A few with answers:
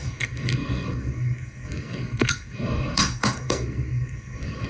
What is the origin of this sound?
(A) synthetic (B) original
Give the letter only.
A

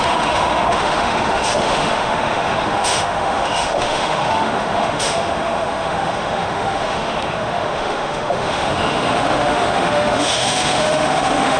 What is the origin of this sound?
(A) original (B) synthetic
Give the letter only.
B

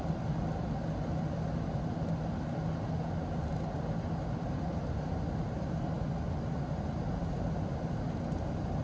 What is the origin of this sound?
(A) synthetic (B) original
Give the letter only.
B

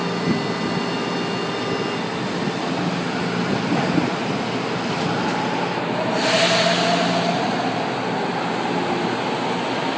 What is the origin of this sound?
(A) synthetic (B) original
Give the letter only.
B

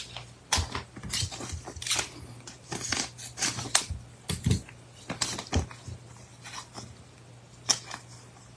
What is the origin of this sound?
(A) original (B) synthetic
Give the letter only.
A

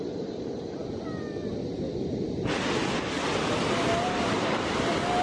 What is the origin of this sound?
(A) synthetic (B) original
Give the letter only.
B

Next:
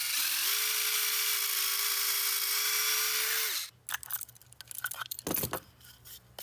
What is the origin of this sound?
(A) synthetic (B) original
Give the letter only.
B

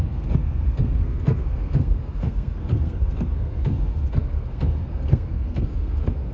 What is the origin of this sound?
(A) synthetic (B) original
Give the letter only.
A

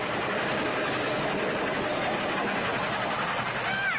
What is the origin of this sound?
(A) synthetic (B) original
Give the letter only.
B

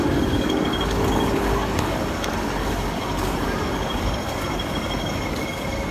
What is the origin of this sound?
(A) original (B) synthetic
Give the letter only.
B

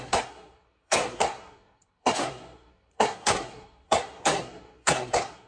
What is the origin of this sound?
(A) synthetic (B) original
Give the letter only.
A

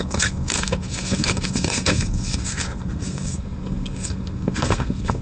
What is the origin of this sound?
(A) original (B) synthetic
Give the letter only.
B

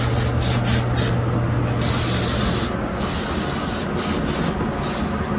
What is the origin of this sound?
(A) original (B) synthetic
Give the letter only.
A